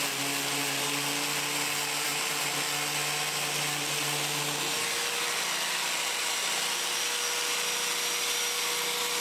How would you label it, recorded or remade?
recorded